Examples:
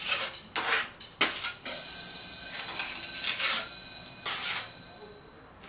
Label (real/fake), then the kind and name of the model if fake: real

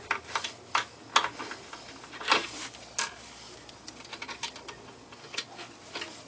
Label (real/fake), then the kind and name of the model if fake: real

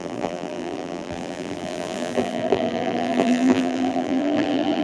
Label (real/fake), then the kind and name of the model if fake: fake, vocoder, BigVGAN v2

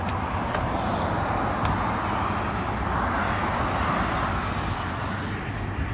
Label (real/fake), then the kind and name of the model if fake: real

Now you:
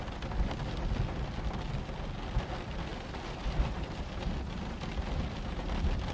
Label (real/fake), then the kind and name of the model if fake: real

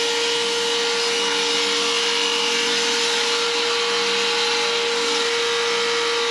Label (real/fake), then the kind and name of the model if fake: real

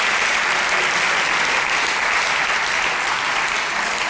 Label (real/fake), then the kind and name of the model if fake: real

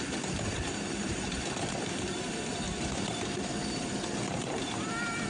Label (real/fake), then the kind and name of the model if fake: fake, vocoder, BigVGAN v2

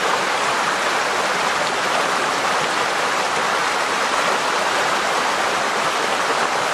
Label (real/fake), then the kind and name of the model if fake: real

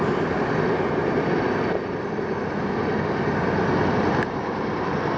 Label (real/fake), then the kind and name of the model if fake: real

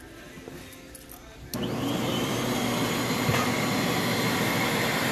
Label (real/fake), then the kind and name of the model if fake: real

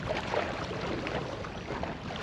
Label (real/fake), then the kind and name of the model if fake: real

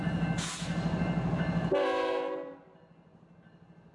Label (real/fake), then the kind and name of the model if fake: real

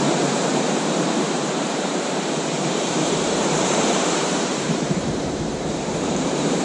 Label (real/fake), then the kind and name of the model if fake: fake, vocoder, BigVGAN v2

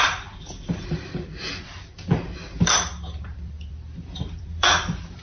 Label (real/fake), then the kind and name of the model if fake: fake, vocoder, BigVGAN v2